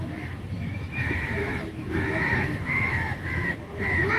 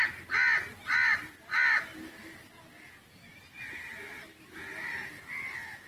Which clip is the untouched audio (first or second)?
second